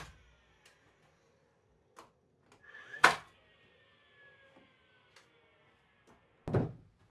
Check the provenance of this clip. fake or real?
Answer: real